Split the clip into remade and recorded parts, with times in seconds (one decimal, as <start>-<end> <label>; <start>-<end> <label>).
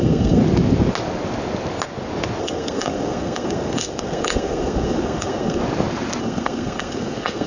0.0-0.4 remade; 0.4-2.4 recorded; 2.4-5.6 remade; 5.6-6.2 recorded; 6.2-7.5 remade